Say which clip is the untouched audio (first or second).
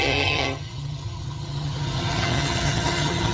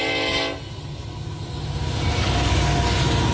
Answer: second